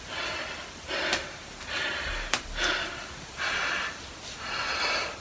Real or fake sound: real